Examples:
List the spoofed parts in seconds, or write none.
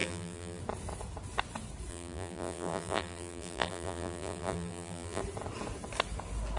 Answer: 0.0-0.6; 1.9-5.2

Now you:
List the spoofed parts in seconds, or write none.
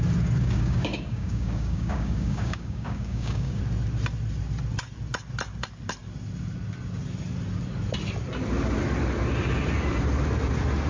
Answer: 0.4-3.6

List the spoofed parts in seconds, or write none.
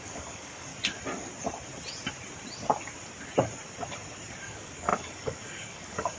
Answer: 0.0-0.7; 4.4-6.2